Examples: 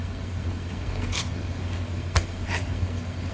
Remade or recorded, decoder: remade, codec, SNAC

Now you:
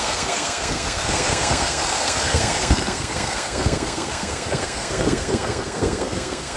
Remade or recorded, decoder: remade, codec, SNAC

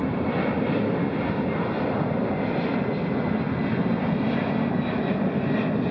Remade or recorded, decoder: recorded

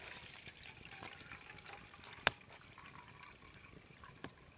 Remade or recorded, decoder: recorded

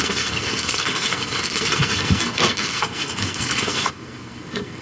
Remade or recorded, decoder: remade, codec, SNAC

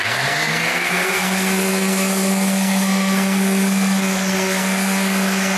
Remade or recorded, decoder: remade, codec, SNAC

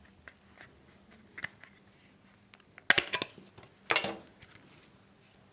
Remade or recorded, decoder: recorded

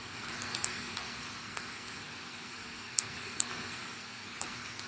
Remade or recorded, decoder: remade, codec, SNAC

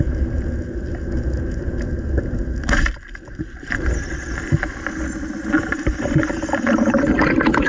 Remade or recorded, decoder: recorded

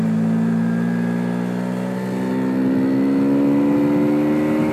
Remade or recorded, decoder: recorded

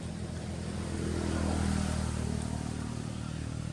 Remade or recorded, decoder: recorded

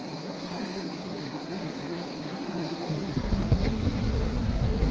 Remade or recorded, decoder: remade, codec, SNAC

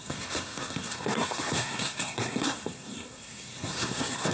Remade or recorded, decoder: remade, codec, SNAC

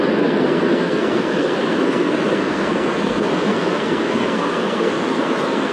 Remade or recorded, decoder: remade, codec, SNAC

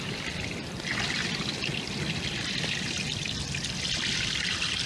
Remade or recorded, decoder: recorded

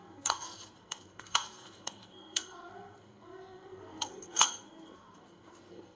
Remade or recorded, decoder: remade, codec, SNAC